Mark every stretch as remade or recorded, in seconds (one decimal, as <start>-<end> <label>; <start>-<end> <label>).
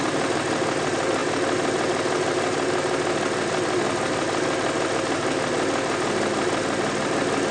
0.0-7.5 recorded